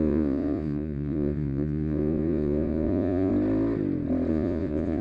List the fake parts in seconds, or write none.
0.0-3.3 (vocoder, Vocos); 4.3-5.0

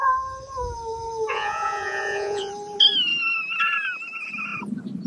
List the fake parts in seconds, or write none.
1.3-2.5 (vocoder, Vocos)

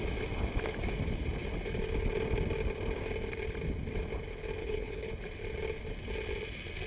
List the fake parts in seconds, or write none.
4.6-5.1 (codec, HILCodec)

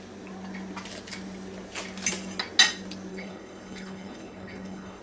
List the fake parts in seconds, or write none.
3.1-5.0 (codec, HILCodec)

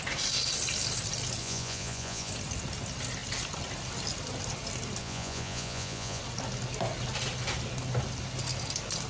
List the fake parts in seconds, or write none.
1.4-2.3 (vocoder, Vocos); 5.0-6.2

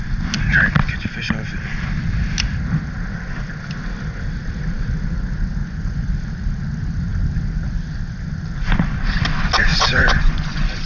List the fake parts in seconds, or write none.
5.6-6.1 (vocoder, Vocos); 9.7-10.9

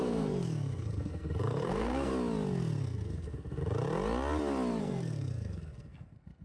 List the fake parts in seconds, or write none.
0.0-2.1 (codec, SNAC); 2.8-3.6; 4.8-6.4

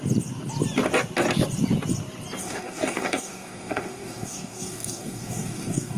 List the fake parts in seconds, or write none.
2.4-6.0 (codec, DAC)